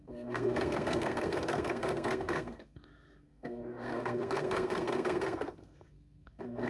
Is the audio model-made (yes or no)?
yes